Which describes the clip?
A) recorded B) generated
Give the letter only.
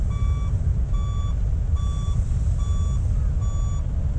A